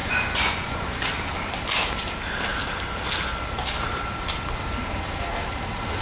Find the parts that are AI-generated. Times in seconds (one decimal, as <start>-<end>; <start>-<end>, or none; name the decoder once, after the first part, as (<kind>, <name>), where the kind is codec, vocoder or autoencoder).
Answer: 0.0-1.1 (vocoder, Vocos)